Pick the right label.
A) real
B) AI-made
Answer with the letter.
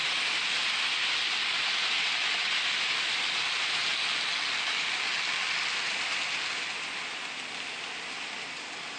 A